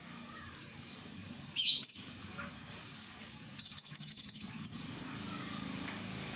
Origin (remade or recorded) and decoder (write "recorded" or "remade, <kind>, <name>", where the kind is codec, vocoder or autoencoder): remade, codec, DAC